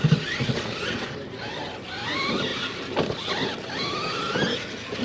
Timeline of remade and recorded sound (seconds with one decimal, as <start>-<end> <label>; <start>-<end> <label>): 0.0-5.0 recorded